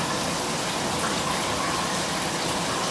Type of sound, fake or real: real